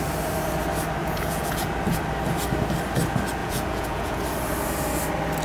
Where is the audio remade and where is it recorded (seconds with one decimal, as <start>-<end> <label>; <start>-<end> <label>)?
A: 0.0-1.0 recorded; 1.0-1.7 remade; 1.7-3.4 recorded; 3.4-4.2 remade; 4.2-5.4 recorded